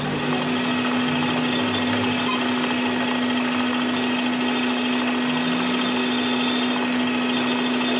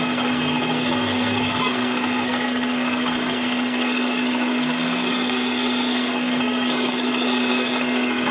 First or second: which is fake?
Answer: second